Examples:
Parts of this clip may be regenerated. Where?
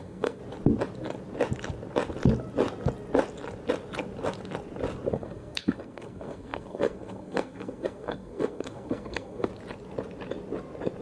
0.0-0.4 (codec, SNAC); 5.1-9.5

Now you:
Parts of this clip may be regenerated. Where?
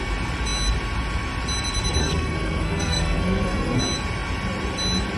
2.0-3.8 (codec, SNAC)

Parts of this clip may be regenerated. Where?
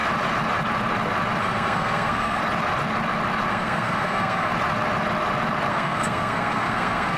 1.4-2.4 (codec, SNAC); 3.5-4.5; 5.7-7.2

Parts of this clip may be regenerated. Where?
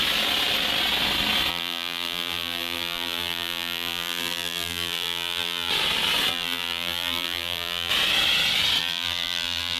1.5-5.7 (vocoder, BigVGAN v2); 6.3-7.9; 8.8-9.8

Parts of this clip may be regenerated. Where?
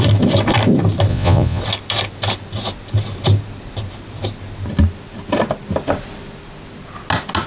1.1-1.6 (vocoder, Vocos)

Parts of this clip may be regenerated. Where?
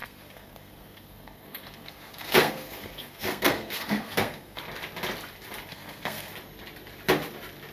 0.0-4.6 (codec, SNAC); 5.7-6.3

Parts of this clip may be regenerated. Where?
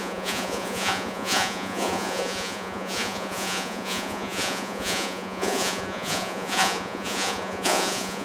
0.0-8.2 (vocoder, Vocos)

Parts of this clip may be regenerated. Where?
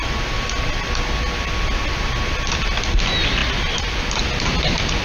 none